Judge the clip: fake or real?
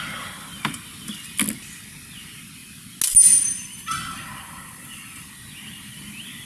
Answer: real